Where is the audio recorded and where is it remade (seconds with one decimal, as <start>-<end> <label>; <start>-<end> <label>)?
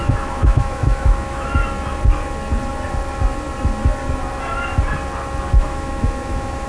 0.0-1.6 remade; 1.6-5.6 recorded; 5.6-6.7 remade